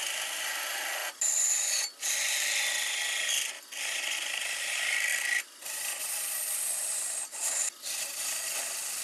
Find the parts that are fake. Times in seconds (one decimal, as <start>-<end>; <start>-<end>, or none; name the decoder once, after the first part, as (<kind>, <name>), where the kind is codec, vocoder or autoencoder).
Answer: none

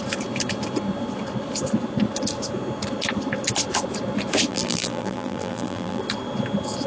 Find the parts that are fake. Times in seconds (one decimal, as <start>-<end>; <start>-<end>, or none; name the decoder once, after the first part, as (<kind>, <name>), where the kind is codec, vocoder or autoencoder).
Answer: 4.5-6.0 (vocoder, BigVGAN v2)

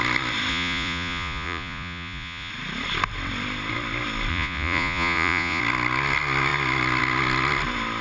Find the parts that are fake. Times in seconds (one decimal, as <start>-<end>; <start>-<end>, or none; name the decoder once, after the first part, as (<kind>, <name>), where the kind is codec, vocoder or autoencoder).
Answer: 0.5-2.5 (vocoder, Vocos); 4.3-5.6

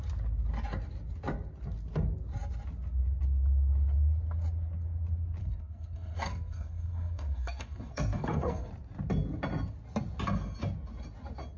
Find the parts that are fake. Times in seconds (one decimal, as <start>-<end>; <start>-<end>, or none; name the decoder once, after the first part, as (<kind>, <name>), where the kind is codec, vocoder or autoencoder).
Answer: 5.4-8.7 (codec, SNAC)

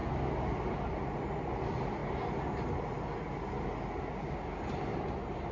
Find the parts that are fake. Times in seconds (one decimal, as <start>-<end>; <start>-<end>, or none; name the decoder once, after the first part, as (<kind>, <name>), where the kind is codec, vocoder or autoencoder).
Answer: none

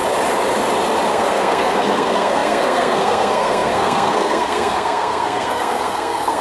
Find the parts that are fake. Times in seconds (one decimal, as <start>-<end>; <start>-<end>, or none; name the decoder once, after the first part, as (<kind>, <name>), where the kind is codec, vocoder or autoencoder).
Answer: 1.1-6.4 (codec, SNAC)

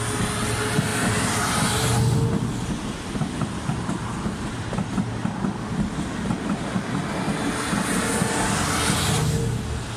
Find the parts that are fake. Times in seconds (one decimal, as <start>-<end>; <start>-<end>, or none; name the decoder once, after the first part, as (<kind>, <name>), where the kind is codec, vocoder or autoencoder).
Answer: none